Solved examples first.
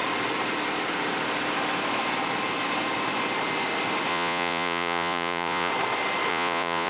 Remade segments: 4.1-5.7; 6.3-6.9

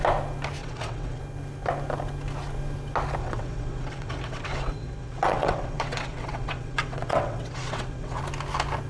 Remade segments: 0.6-1.2; 3.2-8.2

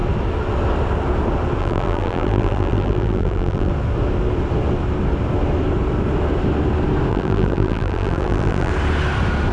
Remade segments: 1.6-3.7; 7.1-8.7

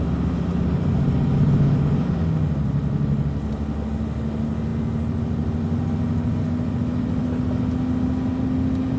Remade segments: none